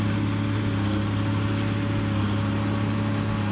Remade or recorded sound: recorded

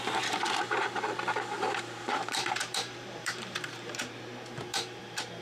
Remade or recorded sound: remade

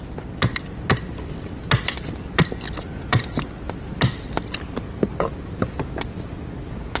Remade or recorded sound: recorded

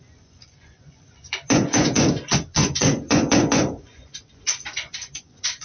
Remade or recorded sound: remade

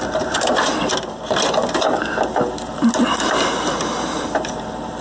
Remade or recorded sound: recorded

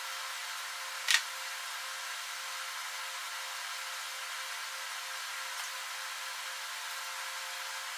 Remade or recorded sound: recorded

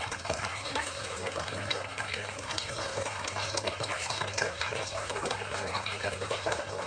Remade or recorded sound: remade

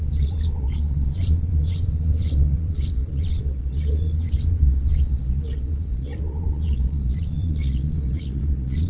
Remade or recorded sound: remade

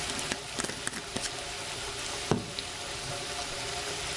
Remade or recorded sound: recorded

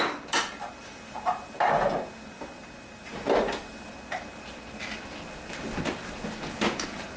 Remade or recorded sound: recorded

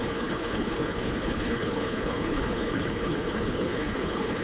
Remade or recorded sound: remade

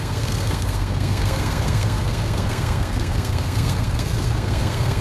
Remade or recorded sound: remade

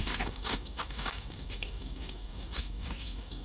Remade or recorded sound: remade